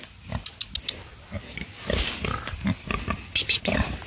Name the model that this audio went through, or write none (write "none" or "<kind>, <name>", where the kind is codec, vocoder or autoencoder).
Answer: none